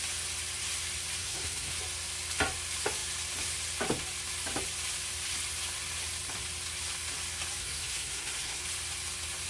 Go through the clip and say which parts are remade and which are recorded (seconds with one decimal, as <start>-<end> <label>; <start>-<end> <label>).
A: 0.0-1.2 recorded; 1.2-1.7 remade; 1.7-7.6 recorded; 7.6-8.6 remade; 8.6-9.5 recorded